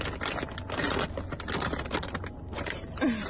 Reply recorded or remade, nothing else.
recorded